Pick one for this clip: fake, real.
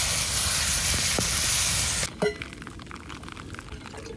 real